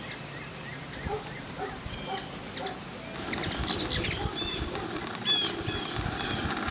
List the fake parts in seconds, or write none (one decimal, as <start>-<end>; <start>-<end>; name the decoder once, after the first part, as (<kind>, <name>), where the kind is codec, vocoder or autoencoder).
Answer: 0.7-2.2 (vocoder, BigVGAN v2)